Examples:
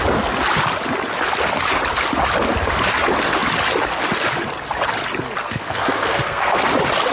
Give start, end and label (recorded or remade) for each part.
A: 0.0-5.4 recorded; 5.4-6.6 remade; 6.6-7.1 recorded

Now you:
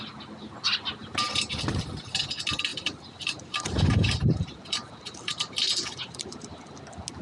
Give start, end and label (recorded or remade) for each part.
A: 0.0-2.7 recorded; 2.7-6.6 remade; 6.6-7.2 recorded

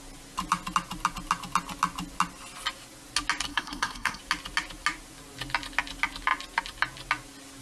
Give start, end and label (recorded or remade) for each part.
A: 0.0-3.5 recorded; 3.5-4.2 remade; 4.2-7.6 recorded

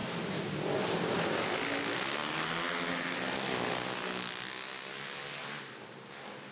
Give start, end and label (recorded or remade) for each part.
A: 0.0-6.5 recorded